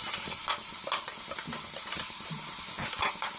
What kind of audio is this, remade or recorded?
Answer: recorded